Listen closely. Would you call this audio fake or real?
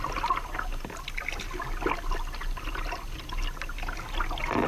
real